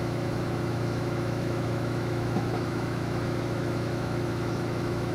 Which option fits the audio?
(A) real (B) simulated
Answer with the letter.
B